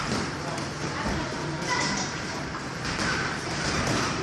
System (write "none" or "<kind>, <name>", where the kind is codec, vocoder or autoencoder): vocoder, BigVGAN v2